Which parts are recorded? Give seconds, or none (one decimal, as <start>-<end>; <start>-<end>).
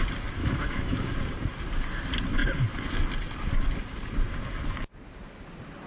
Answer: 0.0-0.4; 1.1-5.9